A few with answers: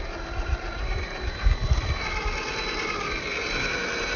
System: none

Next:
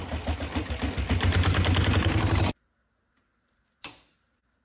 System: none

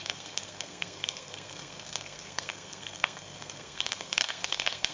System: codec, SNAC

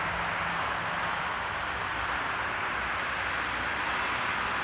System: none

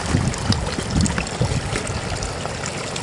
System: none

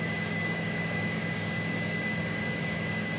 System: codec, DAC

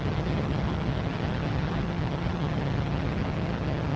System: vocoder, HiFi-GAN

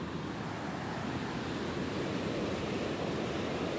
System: none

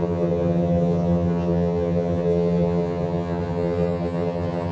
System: vocoder, HiFi-GAN